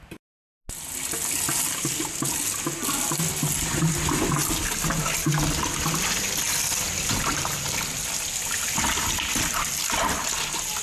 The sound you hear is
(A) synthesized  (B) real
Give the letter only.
B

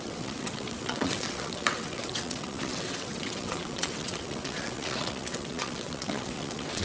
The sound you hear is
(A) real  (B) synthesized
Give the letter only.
B